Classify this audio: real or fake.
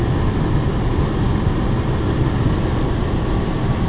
real